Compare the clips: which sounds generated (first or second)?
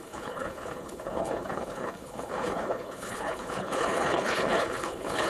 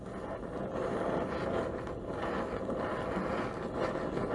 first